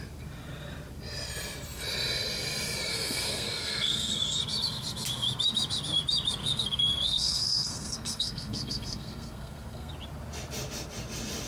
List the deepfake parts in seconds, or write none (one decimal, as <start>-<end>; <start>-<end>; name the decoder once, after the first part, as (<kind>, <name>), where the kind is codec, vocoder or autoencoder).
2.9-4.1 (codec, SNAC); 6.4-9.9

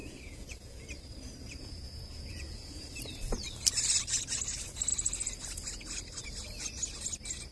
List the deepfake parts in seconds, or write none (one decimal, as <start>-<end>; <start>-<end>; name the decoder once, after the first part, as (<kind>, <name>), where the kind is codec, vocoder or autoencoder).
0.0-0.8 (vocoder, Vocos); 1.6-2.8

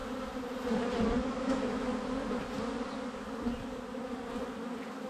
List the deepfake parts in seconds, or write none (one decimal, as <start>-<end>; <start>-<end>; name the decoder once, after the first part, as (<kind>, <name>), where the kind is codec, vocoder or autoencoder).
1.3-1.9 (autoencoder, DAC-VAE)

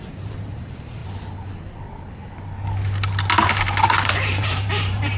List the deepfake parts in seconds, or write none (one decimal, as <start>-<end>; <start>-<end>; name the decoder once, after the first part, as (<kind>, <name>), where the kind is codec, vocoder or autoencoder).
0.0-1.0 (vocoder, BigVGAN v2); 4.1-5.2

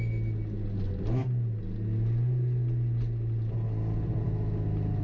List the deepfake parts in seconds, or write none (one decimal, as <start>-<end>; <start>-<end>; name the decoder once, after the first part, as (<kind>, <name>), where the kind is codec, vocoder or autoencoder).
none